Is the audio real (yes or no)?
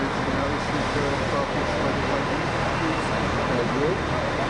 yes